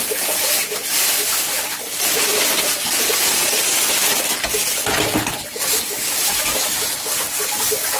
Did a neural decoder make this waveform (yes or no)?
no